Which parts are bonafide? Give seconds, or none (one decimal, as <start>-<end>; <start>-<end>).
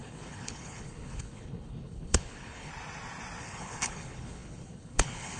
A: 2.7-3.4